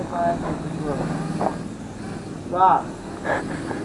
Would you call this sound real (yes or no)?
yes